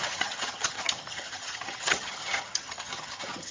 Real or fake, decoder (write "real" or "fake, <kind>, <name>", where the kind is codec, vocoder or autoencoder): fake, vocoder, HiFi-GAN